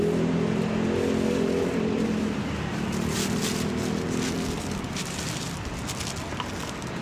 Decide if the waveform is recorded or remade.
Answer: recorded